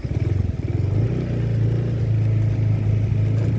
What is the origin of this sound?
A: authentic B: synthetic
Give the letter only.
A